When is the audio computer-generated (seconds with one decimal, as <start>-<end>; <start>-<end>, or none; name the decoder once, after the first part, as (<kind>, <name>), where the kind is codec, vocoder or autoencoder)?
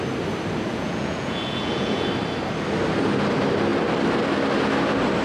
0.7-2.1 (vocoder, Vocos)